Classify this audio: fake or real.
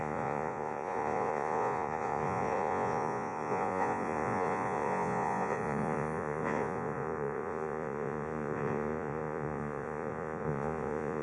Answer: fake